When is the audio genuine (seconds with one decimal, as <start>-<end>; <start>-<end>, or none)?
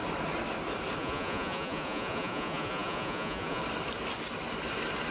0.0-1.0; 3.6-5.1